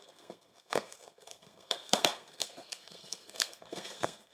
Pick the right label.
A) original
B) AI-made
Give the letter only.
B